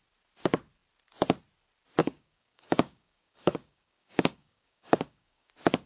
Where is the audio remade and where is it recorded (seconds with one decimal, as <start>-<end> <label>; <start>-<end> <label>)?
0.0-2.0 recorded; 2.0-5.5 remade; 5.5-5.9 recorded